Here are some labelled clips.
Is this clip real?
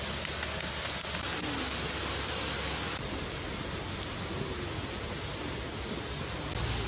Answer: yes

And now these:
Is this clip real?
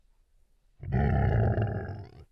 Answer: yes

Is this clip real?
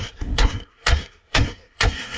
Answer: no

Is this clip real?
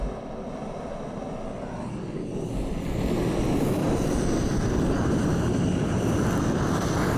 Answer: yes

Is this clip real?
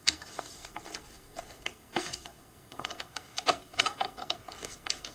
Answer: no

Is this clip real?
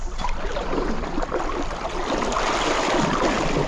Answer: yes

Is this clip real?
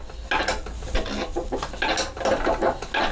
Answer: yes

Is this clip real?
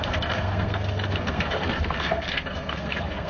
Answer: no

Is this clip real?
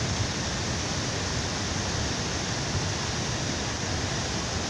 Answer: yes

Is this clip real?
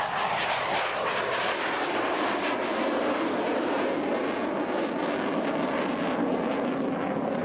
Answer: yes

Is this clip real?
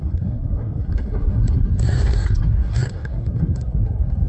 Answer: no